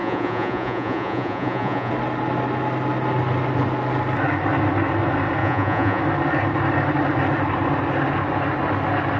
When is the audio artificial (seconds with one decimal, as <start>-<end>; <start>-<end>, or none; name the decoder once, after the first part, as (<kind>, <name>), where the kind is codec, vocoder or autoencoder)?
0.0-1.9 (vocoder, Vocos); 5.4-6.0